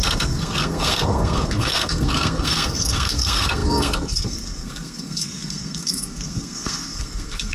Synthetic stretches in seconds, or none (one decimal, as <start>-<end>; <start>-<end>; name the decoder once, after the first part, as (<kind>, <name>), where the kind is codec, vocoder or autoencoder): 0.0-7.5 (codec, SNAC)